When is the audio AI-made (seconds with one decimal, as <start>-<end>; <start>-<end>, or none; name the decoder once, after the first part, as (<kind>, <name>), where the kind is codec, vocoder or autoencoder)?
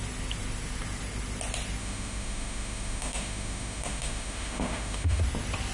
1.8-5.2 (autoencoder, DAC-VAE)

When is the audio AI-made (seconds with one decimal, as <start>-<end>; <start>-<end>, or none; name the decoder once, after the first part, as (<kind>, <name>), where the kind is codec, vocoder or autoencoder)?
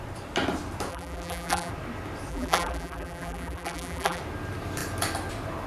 0.9-1.7 (vocoder, BigVGAN v2); 2.3-4.2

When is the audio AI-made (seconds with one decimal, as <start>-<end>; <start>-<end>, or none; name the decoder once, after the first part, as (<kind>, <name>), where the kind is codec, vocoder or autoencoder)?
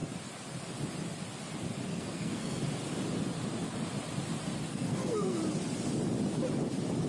1.9-2.6 (codec, SNAC); 4.7-5.4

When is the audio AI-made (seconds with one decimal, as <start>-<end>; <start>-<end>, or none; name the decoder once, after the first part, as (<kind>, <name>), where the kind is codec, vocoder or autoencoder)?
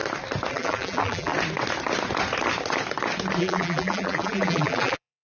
0.5-1.3 (vocoder, BigVGAN v2); 3.4-5.2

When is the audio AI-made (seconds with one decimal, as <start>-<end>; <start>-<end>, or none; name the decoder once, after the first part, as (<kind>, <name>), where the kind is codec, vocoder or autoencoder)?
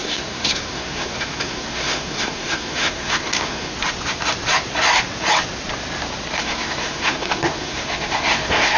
0.0-3.7 (codec, SNAC); 6.4-8.8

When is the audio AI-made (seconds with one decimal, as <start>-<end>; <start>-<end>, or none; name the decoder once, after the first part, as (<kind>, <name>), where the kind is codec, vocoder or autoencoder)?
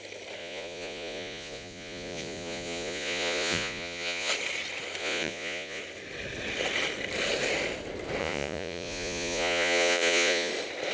0.4-4.3 (vocoder, Vocos); 5.0-5.8; 8.2-10.5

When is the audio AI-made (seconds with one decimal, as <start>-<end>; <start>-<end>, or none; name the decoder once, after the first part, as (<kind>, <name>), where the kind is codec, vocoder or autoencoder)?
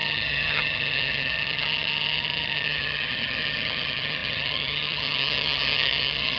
0.0-6.4 (vocoder, HiFi-GAN)